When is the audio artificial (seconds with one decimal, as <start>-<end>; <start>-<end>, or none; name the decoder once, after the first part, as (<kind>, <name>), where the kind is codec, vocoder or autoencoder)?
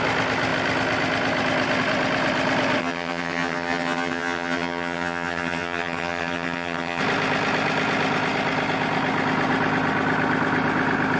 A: 2.8-7.0 (vocoder, HiFi-GAN)